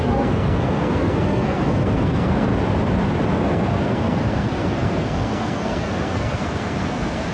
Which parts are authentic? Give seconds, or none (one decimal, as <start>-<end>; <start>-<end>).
2.5-3.3